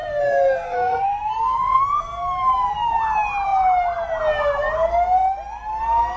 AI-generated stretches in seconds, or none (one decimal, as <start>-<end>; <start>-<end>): 0.0-1.8